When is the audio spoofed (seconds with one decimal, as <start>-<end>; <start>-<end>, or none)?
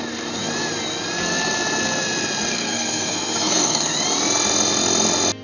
2.5-3.9